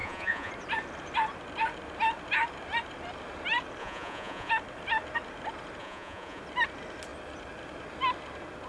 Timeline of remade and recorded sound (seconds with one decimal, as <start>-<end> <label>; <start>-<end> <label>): 0.0-0.5 remade; 0.5-3.8 recorded; 3.8-4.5 remade; 4.5-5.8 recorded; 5.8-6.4 remade; 6.4-8.7 recorded